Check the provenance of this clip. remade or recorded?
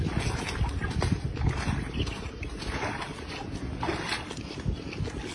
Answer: recorded